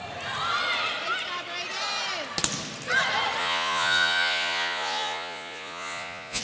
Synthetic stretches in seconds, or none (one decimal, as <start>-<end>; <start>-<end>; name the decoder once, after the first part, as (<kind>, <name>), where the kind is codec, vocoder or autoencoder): 3.4-6.4 (vocoder, Vocos)